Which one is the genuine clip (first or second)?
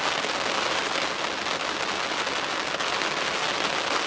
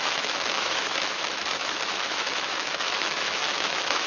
first